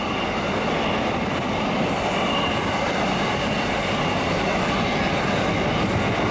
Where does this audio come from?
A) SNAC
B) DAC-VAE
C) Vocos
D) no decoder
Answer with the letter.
D